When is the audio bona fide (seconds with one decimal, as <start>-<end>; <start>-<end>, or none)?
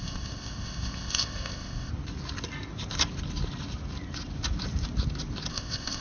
1.9-5.5